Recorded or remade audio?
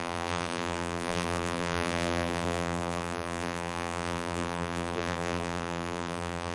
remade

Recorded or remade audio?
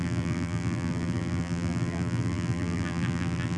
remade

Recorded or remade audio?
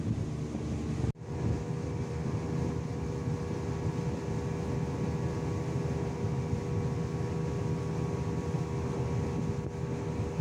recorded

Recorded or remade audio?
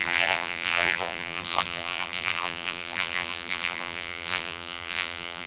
remade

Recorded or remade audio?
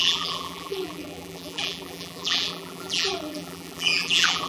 remade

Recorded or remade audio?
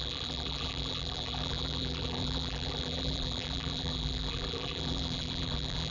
remade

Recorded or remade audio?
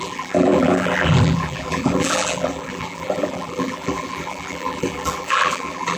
remade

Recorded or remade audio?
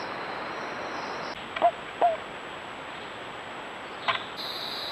recorded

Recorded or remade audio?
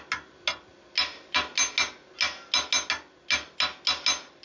recorded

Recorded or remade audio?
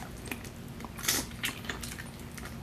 recorded